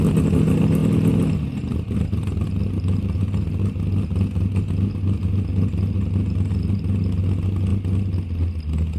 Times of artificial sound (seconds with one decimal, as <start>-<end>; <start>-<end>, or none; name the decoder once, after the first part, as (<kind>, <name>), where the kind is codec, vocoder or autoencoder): none